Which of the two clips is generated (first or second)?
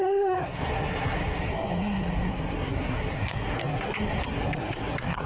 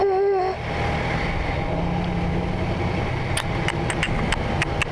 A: first